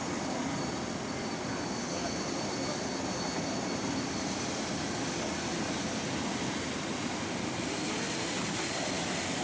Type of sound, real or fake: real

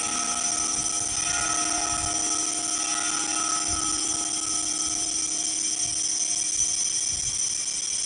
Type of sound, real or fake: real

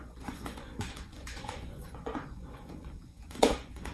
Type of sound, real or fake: fake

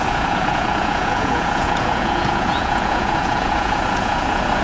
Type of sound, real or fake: fake